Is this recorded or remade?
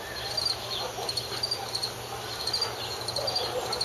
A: recorded